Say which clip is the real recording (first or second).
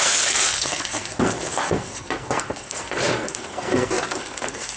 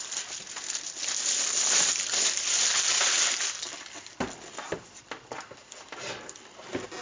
second